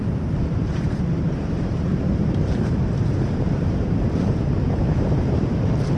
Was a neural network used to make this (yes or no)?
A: yes